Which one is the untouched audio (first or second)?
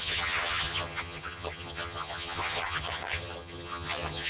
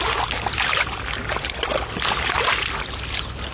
second